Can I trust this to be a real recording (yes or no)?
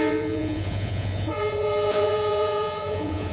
no